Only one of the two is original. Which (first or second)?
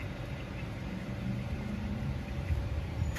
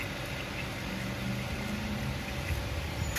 second